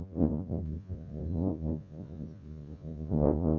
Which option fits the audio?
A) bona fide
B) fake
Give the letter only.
B